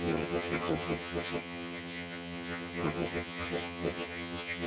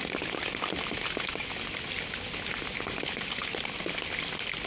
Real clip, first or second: second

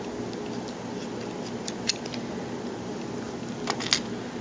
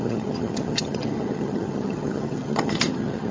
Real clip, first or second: first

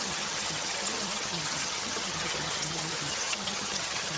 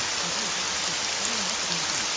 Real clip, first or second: second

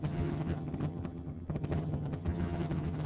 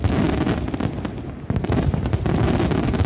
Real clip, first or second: second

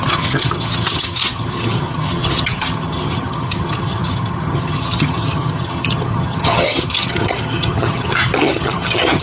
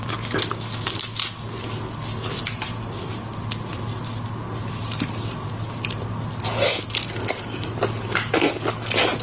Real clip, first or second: second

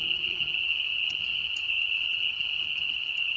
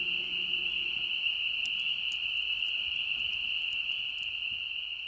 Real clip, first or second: second